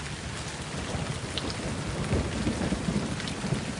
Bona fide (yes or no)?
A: yes